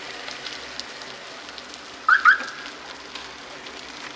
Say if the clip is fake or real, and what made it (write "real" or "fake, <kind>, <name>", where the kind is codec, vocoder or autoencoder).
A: real